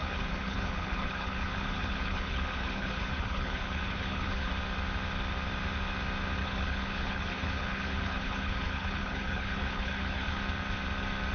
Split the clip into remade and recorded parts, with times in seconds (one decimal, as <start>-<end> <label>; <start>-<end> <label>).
0.0-4.5 remade; 4.5-6.4 recorded; 6.4-10.4 remade; 10.4-11.3 recorded